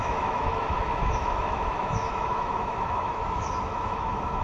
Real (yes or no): no